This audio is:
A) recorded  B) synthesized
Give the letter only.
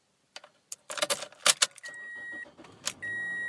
A